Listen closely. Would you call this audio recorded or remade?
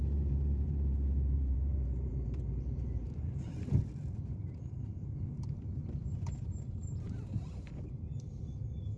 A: remade